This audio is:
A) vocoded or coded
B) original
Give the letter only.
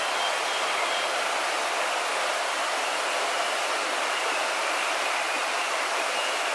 B